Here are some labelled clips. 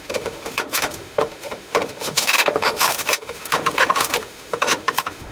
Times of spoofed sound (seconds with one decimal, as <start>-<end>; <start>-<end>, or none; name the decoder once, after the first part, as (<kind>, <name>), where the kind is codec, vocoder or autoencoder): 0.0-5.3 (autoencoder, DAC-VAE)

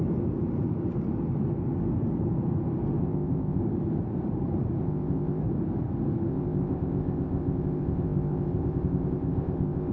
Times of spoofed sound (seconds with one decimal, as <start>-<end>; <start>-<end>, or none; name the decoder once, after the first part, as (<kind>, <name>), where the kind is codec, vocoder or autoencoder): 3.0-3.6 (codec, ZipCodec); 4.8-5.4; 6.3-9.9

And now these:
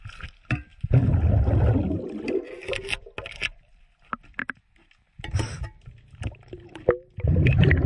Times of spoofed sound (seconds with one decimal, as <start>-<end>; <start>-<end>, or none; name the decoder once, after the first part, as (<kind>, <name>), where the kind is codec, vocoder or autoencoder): none

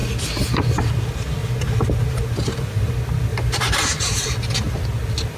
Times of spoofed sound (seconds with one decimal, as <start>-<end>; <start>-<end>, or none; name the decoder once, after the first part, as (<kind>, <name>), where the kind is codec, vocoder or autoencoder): 1.4-2.9 (vocoder, BigVGAN v2); 3.3-4.8